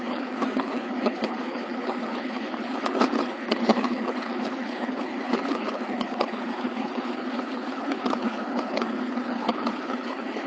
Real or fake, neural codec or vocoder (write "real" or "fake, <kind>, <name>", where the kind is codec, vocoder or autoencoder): fake, codec, HILCodec